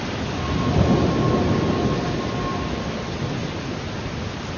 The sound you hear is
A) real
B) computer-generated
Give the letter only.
A